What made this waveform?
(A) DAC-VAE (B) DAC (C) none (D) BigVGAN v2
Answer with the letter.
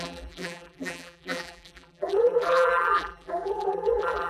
D